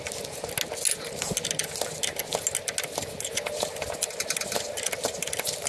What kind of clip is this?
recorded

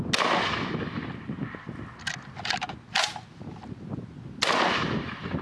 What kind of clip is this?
recorded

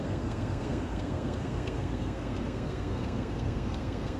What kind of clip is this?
remade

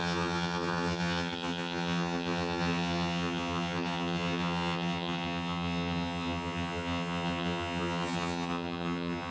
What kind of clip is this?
remade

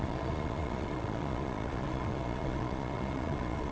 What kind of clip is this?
remade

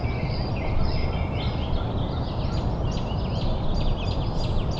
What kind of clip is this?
recorded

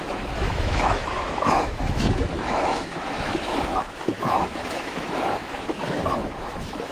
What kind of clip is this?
remade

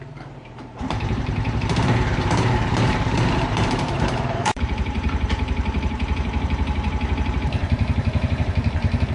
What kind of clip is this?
remade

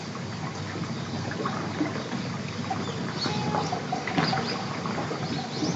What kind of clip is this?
recorded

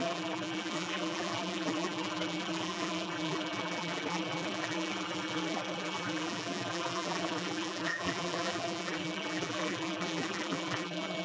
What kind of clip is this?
remade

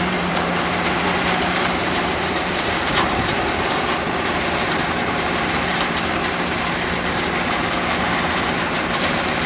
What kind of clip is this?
remade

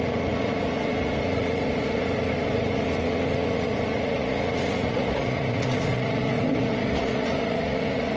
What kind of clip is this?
remade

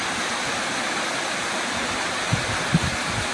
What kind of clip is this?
recorded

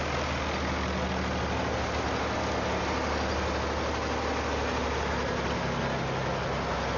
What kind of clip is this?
recorded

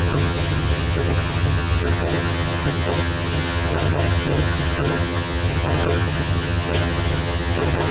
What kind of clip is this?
remade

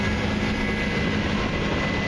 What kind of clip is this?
recorded